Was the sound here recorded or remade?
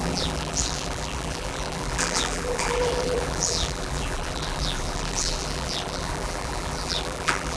remade